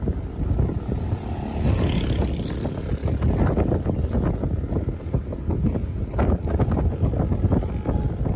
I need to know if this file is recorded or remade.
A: recorded